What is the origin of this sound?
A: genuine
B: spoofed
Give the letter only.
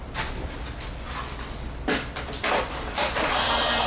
B